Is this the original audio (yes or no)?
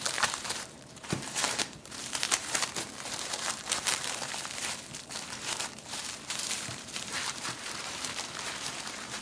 no